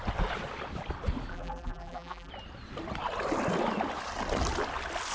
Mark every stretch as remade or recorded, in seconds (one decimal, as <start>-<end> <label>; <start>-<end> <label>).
0.0-1.3 recorded; 1.3-2.3 remade; 2.3-5.1 recorded